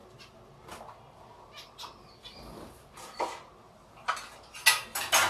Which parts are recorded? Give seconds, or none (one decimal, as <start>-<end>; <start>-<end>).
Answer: 0.0-5.3